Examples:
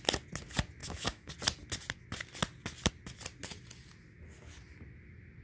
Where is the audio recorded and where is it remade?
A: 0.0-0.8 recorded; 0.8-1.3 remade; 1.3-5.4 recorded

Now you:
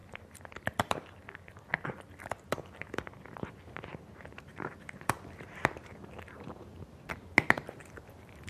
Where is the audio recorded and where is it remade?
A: 0.0-4.3 recorded; 4.3-6.7 remade; 6.7-8.1 recorded; 8.1-8.5 remade

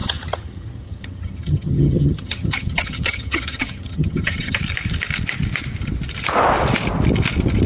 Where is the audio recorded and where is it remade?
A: 0.0-4.6 remade; 4.6-7.7 recorded

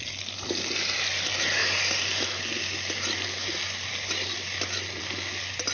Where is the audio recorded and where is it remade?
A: 0.0-5.7 recorded

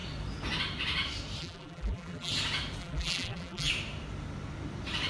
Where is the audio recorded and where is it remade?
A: 0.0-1.4 recorded; 1.4-2.3 remade; 2.3-2.8 recorded; 2.8-3.7 remade; 3.7-5.1 recorded

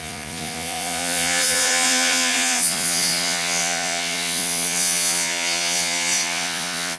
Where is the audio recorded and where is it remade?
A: 0.0-7.0 remade

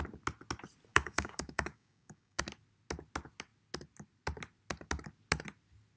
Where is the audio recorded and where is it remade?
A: 0.0-0.9 recorded; 0.9-2.4 remade; 2.4-6.0 recorded

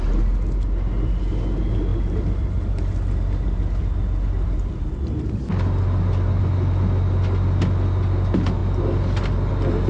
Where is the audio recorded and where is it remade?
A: 0.0-9.9 recorded